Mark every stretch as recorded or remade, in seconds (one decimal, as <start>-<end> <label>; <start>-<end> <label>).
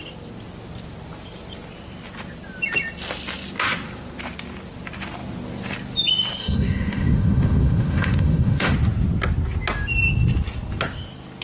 0.0-6.4 recorded; 6.4-8.7 remade; 8.7-11.4 recorded